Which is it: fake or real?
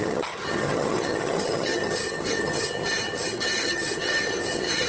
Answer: fake